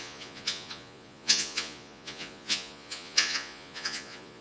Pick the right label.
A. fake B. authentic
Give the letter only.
A